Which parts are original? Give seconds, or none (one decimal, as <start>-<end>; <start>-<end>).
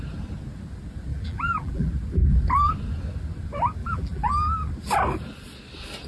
0.0-1.1; 1.9-3.8; 4.3-6.1